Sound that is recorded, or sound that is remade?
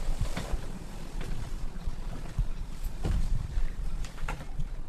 remade